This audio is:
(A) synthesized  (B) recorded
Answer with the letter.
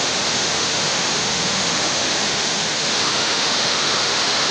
A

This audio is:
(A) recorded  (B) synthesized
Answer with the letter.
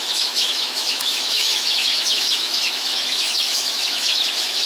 B